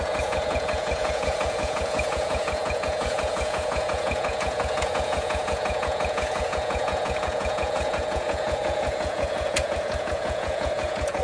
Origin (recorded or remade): remade